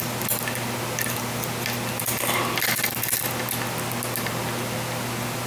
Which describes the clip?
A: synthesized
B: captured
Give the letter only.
B